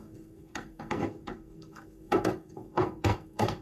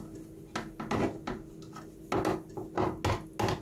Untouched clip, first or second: second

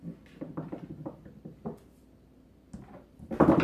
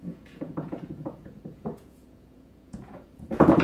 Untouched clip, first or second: first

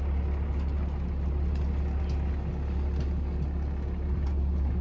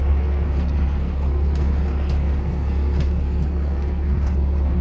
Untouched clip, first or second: first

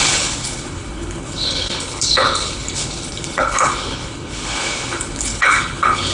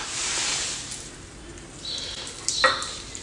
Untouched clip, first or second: second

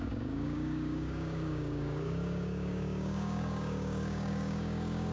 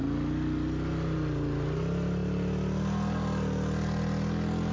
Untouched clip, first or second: second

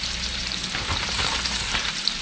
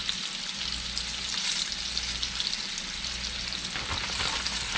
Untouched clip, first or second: second